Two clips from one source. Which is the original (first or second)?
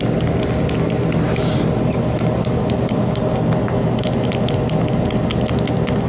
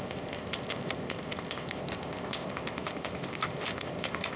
first